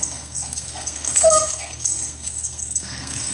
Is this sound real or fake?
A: fake